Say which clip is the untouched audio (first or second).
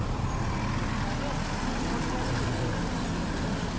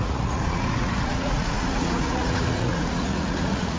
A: first